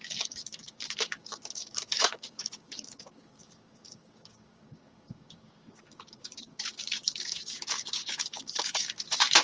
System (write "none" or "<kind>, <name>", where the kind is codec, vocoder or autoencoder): codec, DAC